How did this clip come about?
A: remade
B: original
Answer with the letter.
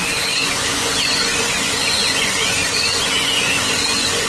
A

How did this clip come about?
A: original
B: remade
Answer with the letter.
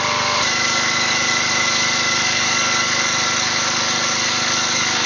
B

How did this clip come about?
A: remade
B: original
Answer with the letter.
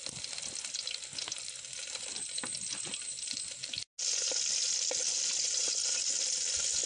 B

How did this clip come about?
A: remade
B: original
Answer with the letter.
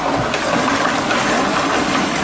B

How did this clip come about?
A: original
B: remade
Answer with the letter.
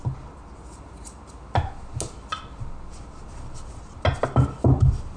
A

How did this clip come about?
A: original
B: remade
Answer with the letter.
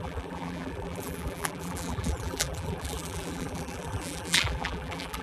B